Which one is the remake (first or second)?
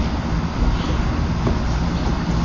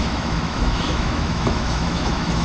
second